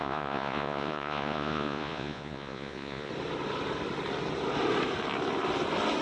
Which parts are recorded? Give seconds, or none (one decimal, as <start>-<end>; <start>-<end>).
3.1-6.0